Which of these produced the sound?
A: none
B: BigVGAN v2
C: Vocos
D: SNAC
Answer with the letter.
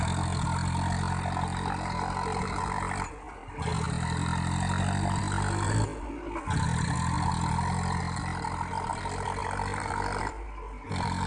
A